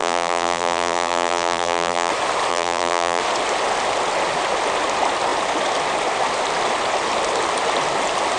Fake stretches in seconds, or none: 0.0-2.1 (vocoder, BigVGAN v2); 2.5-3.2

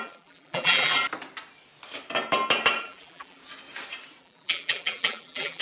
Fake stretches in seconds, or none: 0.0-0.9 (vocoder, BigVGAN v2); 2.8-3.4; 4.2-5.6

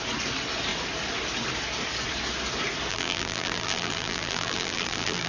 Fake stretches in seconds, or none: 2.9-5.3 (vocoder, BigVGAN v2)

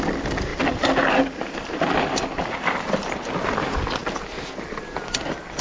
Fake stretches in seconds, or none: 0.5-2.9 (vocoder, BigVGAN v2)

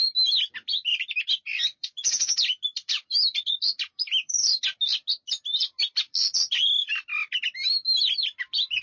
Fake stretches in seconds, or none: 0.0-4.5 (vocoder, BigVGAN v2); 5.6-7.1; 8.0-8.8

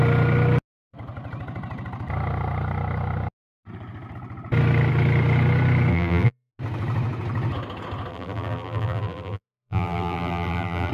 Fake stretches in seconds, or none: 5.9-6.5 (vocoder, BigVGAN v2); 8.1-10.9

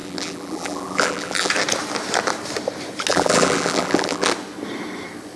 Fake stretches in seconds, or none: 0.0-1.5 (vocoder, BigVGAN v2); 3.1-4.3

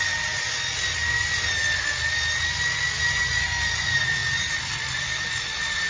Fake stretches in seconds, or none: 4.2-5.9 (vocoder, BigVGAN v2)